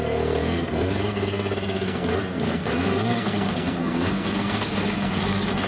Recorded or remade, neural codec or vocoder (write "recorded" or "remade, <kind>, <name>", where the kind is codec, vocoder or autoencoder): remade, codec, SNAC